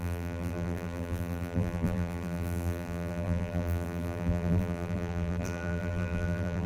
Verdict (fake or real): fake